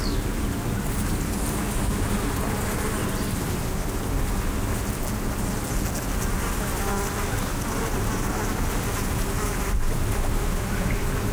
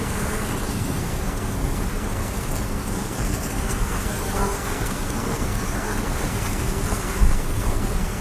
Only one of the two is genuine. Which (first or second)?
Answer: first